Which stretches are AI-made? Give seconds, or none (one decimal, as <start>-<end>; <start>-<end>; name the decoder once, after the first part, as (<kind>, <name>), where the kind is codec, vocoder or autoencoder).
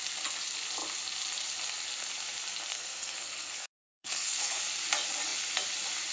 2.7-4.6 (codec, SNAC)